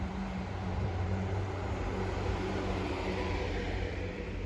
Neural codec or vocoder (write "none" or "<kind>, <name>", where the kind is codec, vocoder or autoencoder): vocoder, BigVGAN v2